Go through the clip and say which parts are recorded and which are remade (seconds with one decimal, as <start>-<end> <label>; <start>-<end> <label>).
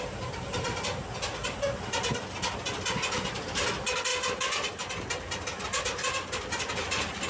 0.0-7.3 recorded